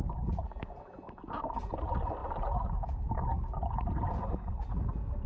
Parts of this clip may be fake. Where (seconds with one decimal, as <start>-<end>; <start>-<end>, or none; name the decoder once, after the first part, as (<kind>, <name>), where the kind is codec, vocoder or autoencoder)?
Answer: none